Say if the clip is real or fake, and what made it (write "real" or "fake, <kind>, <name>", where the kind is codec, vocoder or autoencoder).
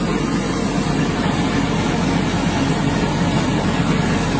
real